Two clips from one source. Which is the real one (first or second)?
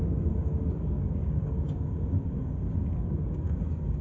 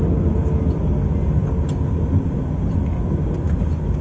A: second